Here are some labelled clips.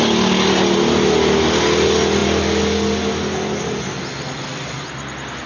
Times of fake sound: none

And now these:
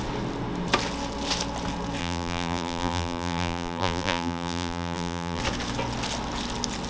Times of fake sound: 2.0-5.4 (vocoder, BigVGAN v2)

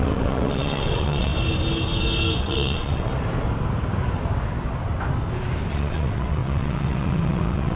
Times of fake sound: 0.0-1.3 (vocoder, WaveNeXt); 2.4-3.1; 5.7-7.8

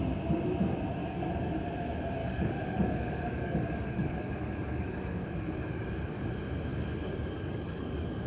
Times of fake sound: 1.0-1.5 (codec, DAC); 2.2-6.3; 6.7-8.3

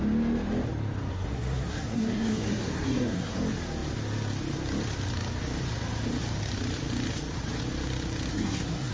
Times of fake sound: 1.1-3.4 (codec, SNAC); 8.3-8.9

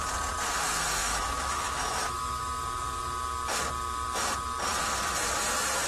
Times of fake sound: 1.0-2.4 (autoencoder, DAC-VAE)